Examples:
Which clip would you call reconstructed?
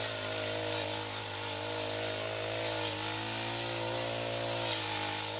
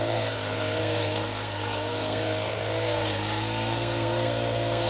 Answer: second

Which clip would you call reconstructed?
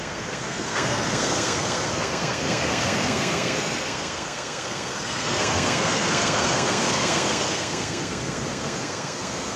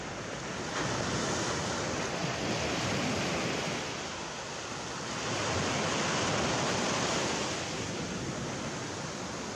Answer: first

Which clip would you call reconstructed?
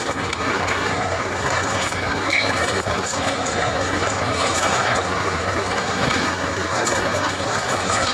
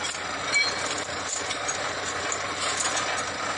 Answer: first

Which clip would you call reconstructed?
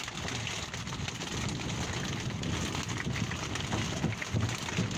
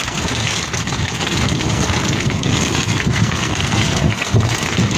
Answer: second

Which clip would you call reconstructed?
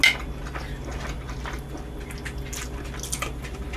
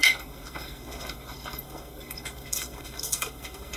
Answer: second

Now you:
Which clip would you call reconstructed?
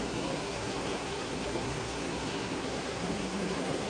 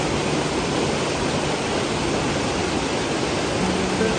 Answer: first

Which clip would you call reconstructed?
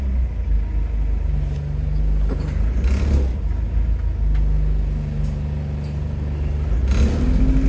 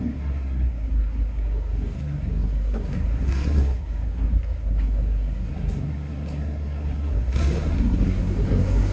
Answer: second